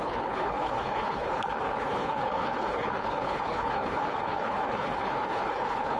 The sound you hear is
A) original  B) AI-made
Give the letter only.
B